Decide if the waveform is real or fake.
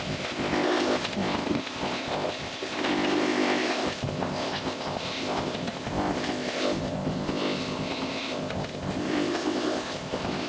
fake